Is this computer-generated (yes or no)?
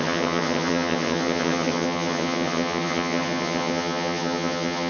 yes